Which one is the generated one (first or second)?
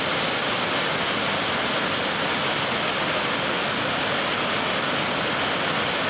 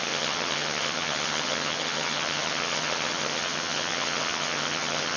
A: second